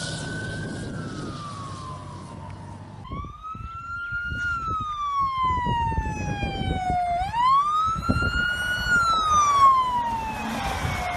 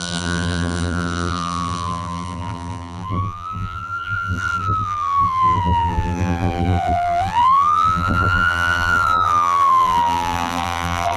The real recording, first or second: first